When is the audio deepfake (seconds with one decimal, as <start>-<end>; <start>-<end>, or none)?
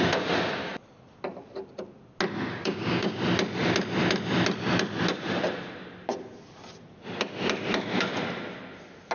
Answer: 2.5-3.2